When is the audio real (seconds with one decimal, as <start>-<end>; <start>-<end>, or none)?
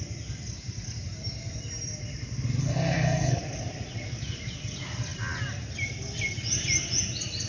0.0-2.6; 3.4-7.5